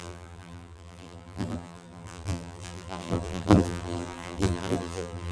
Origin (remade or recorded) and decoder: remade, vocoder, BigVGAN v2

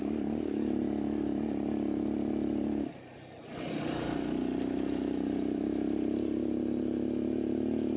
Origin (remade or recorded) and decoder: recorded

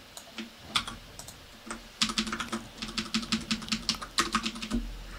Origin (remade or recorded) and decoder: recorded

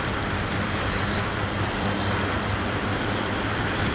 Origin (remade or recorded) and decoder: remade, vocoder, BigVGAN v2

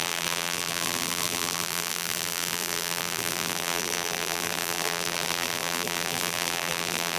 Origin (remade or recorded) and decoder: remade, vocoder, BigVGAN v2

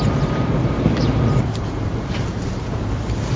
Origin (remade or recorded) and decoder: remade, vocoder, BigVGAN v2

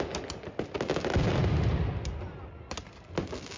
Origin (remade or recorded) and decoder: recorded